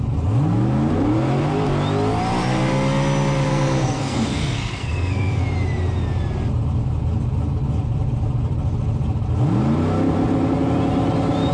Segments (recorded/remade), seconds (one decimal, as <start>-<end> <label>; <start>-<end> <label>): 0.0-3.5 recorded; 3.5-5.4 remade; 5.4-11.5 recorded